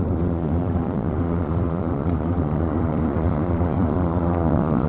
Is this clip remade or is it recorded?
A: remade